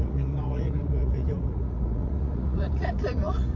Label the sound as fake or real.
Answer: fake